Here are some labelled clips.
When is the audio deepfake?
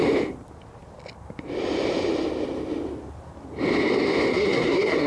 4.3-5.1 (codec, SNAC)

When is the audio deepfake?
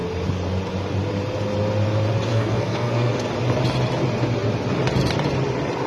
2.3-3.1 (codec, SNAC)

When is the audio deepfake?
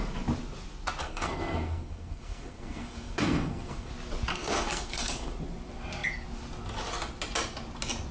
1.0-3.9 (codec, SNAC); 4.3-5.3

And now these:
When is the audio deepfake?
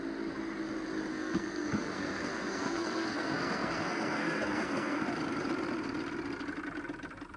1.1-5.0 (codec, SNAC)